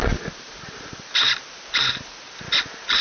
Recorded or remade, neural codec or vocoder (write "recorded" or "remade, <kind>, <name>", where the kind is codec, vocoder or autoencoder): recorded